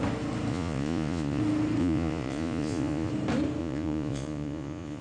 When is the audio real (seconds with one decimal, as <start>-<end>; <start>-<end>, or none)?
0.0-0.5; 1.4-1.8; 3.1-3.6